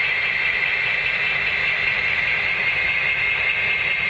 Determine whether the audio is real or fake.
real